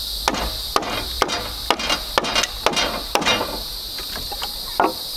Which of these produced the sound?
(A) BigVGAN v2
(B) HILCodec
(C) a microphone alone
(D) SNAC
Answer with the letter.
C